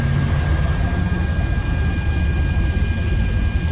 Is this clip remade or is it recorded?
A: recorded